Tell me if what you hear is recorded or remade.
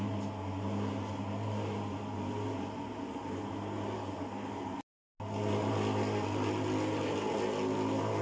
recorded